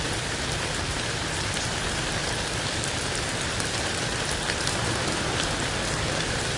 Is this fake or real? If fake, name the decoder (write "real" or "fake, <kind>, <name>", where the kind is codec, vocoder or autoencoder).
fake, vocoder, BigVGAN v2